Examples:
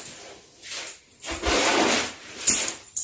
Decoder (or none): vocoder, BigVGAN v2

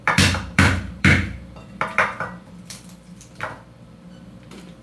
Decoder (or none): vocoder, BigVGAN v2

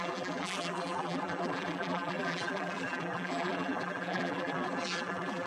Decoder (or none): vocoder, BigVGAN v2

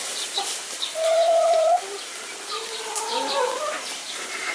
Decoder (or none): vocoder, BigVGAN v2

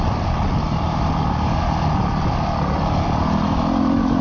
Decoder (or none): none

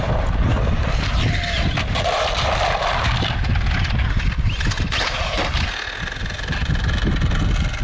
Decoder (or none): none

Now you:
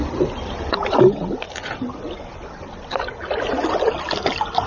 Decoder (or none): none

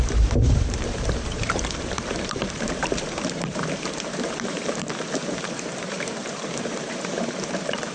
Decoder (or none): vocoder, BigVGAN v2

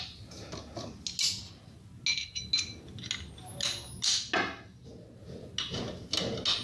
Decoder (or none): none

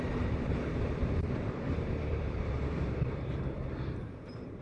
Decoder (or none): vocoder, BigVGAN v2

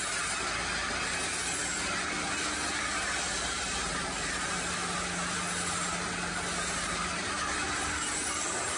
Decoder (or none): none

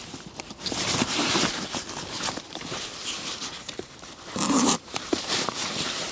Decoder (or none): vocoder, BigVGAN v2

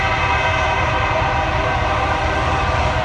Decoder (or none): vocoder, BigVGAN v2